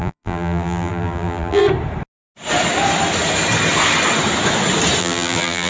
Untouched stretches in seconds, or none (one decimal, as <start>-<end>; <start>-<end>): 1.6-5.0